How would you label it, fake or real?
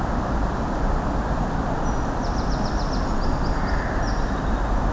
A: real